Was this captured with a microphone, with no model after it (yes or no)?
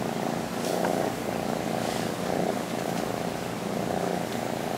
no